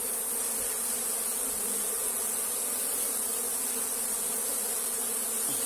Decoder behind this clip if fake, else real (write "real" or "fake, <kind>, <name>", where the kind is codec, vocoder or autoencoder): real